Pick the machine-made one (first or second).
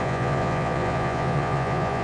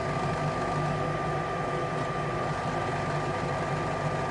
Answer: first